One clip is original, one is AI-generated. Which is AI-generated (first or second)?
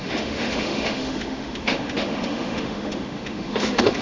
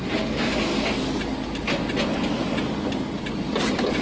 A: first